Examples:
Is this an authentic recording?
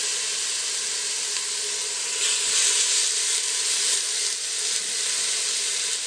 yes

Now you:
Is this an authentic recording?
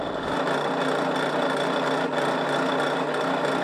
yes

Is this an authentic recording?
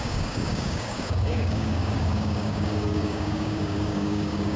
no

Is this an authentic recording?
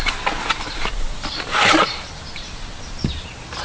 yes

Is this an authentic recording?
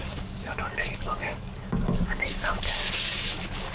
no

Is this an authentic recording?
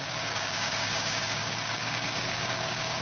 no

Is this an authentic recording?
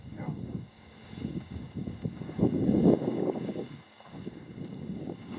no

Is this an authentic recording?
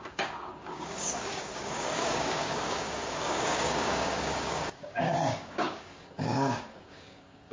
no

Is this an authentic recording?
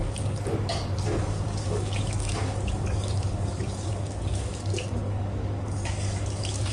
no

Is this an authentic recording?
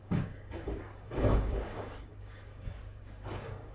no